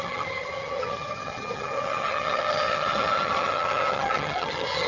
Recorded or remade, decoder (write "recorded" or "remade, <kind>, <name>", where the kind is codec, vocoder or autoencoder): remade, vocoder, HiFi-GAN